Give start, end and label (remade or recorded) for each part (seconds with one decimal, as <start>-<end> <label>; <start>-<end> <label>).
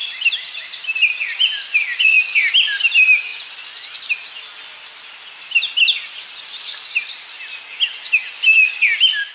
0.0-2.2 remade; 2.2-9.3 recorded